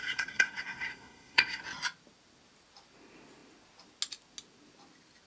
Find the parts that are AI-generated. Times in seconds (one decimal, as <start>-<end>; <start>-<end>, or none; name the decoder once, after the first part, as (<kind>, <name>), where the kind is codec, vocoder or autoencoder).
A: 0.0-1.6 (codec, SNAC)

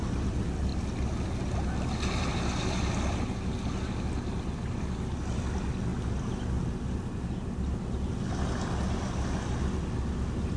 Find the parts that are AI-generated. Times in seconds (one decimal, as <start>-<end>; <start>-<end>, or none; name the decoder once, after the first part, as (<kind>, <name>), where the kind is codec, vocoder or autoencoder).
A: none

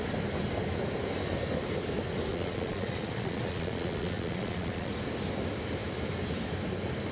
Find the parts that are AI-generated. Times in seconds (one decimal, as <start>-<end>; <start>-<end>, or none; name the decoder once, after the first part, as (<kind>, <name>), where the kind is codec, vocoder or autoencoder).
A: 2.3-4.9 (vocoder, Vocos)

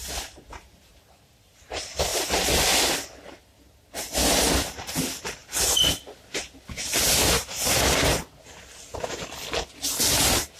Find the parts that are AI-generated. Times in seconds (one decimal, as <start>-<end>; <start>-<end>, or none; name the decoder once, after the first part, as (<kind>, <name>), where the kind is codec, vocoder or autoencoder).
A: none

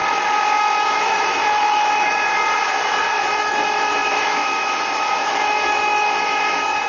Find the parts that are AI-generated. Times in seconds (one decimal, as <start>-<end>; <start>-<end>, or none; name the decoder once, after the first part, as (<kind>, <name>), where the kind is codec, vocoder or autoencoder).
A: 0.6-2.3 (autoencoder, DAC-VAE); 3.3-6.9

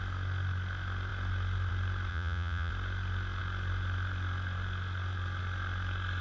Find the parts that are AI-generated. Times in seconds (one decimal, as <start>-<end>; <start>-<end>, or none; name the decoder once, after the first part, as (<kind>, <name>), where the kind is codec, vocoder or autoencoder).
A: 2.1-2.7 (vocoder, Vocos)

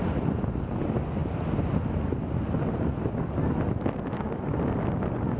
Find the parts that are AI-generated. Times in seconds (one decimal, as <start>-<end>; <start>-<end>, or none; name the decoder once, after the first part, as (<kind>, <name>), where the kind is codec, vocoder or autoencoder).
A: none